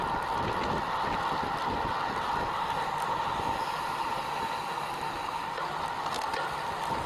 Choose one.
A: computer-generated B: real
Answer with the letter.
B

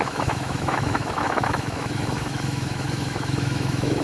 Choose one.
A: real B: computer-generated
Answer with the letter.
B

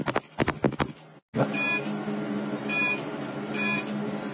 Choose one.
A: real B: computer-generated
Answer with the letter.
A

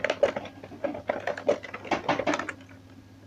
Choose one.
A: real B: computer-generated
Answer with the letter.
A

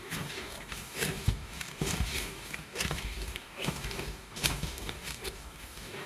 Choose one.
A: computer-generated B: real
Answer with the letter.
A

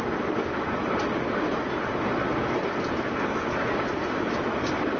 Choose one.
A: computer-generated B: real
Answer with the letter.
B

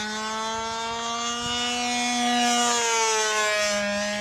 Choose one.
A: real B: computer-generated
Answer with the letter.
A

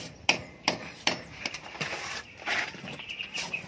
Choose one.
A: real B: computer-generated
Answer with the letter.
B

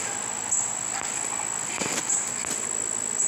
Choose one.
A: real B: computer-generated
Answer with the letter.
A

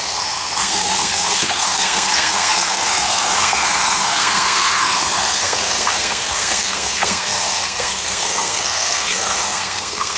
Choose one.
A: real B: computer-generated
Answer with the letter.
B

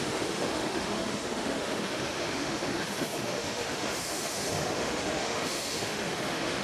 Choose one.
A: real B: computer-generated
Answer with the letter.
B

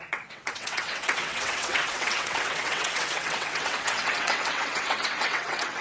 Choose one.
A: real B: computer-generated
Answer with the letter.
B